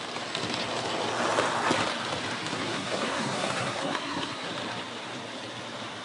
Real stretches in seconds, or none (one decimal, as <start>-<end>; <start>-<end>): 0.0-2.5; 4.5-6.0